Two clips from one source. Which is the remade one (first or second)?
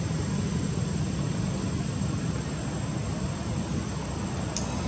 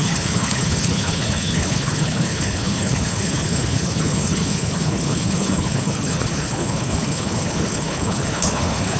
second